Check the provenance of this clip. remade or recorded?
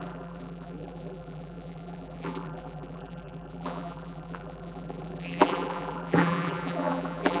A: remade